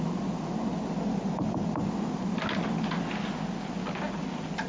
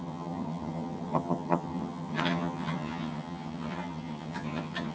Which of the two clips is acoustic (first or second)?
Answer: first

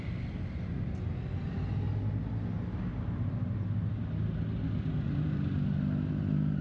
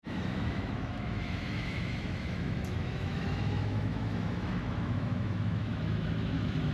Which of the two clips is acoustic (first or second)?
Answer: first